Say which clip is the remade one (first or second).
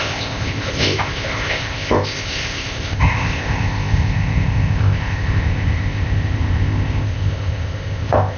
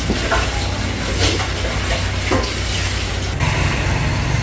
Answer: first